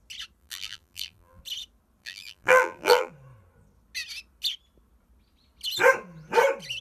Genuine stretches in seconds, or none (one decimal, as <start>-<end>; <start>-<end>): 0.0-0.4; 1.4-2.0; 3.1-6.8